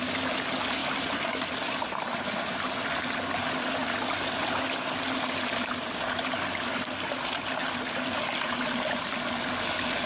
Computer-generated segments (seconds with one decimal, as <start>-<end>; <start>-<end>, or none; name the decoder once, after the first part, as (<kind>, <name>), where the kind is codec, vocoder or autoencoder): 0.8-1.6 (vocoder, BigVGAN v2)